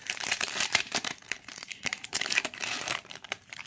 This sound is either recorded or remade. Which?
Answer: remade